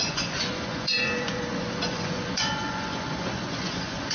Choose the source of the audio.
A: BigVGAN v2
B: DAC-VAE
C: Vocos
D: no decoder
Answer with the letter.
C